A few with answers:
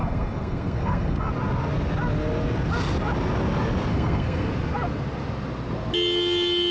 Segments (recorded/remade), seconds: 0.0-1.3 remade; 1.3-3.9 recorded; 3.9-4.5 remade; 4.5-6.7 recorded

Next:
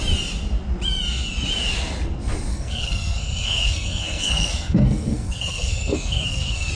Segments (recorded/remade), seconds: 0.0-2.5 recorded; 2.5-6.7 remade

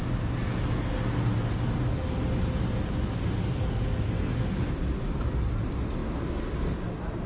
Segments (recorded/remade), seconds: 0.0-7.3 recorded